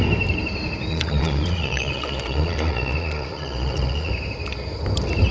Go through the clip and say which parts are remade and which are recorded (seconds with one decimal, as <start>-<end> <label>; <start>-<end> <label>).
0.0-0.9 recorded; 0.9-4.1 remade; 4.1-5.3 recorded